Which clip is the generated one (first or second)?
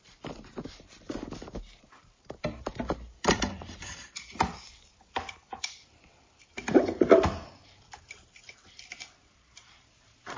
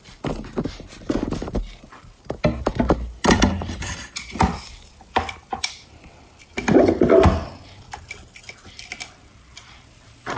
first